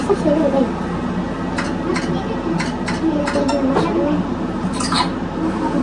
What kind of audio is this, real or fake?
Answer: real